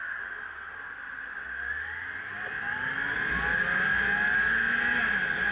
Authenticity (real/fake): real